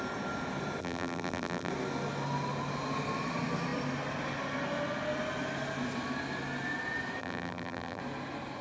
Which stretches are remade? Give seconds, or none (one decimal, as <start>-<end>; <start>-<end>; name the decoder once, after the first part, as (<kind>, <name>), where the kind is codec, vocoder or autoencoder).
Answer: 0.8-1.7 (vocoder, BigVGAN v2); 7.2-8.0